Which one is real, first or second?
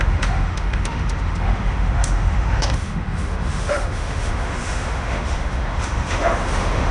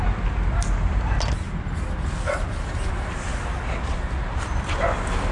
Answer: second